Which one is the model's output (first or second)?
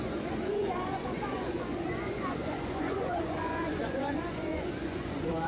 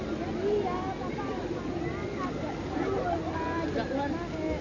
first